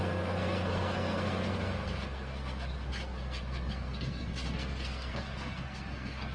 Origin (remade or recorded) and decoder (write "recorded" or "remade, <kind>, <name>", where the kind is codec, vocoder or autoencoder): remade, codec, SNAC